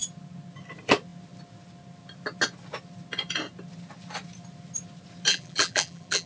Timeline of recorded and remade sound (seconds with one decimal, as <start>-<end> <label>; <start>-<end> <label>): 0.0-5.3 recorded; 5.3-6.3 remade